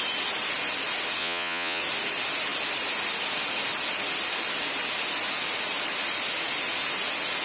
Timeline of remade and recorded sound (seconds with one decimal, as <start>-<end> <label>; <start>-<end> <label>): 0.0-1.2 recorded; 1.2-1.8 remade; 1.8-7.4 recorded